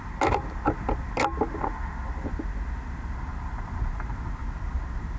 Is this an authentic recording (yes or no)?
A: yes